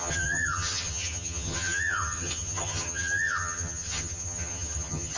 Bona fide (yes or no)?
no